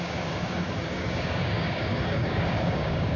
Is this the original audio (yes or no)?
no